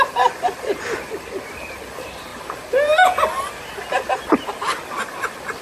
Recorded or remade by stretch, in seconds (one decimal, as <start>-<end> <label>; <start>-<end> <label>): 0.0-2.3 remade; 2.3-4.5 recorded; 4.5-5.6 remade